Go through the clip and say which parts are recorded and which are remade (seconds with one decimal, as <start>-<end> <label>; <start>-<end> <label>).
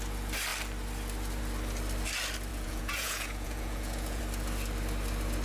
0.0-2.5 recorded; 2.5-4.2 remade; 4.2-5.4 recorded